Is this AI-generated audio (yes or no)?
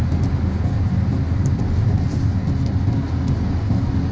no